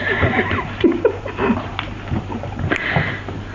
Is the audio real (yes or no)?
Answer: no